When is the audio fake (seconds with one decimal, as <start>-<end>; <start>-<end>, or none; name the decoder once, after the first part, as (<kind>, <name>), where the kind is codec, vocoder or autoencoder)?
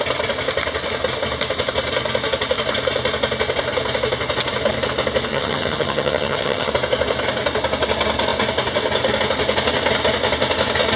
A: 5.3-6.7 (vocoder, HiFi-GAN)